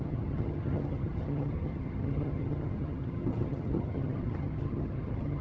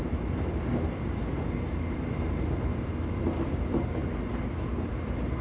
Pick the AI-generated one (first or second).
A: first